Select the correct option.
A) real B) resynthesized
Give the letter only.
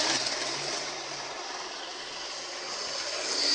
A